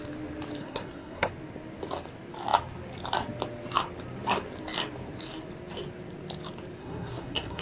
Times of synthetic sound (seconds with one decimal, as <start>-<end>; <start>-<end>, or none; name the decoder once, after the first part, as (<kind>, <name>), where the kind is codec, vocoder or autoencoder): 0.6-1.3 (codec, SNAC); 6.8-7.6